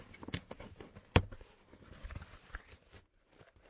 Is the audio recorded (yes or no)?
yes